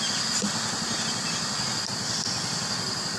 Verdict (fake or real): real